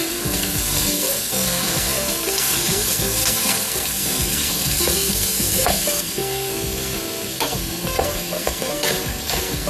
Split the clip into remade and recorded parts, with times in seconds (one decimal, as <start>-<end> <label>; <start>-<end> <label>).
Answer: 0.0-9.7 remade

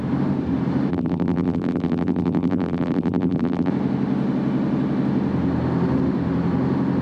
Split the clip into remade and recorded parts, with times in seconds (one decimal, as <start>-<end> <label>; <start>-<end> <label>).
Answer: 0.0-0.9 recorded; 0.9-3.7 remade; 3.7-7.0 recorded

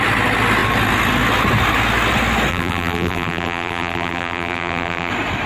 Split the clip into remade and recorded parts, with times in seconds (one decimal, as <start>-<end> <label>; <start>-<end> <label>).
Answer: 0.0-2.5 recorded; 2.5-5.1 remade; 5.1-5.5 recorded

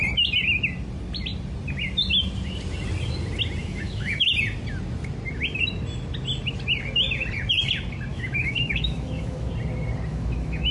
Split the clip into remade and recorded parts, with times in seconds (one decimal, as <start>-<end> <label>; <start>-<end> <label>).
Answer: 0.0-3.6 recorded; 3.6-4.3 remade; 4.3-8.1 recorded; 8.1-9.5 remade; 9.5-10.1 recorded; 10.1-10.7 remade

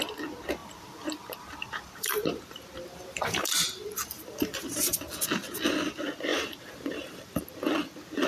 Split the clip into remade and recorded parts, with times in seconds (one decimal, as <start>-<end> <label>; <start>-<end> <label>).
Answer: 0.0-0.6 recorded; 0.6-5.1 remade; 5.1-6.3 recorded; 6.3-7.4 remade; 7.4-8.3 recorded

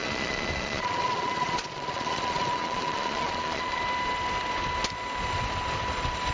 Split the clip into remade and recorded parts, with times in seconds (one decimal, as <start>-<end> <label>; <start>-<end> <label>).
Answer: 0.0-3.8 remade; 3.8-6.3 recorded